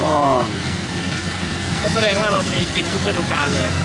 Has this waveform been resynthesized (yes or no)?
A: yes